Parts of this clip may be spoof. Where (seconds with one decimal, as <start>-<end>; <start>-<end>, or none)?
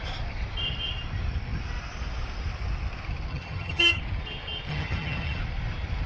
3.3-4.0; 4.7-5.4